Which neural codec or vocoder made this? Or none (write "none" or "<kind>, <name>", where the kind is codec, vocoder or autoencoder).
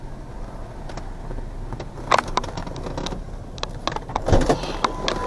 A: none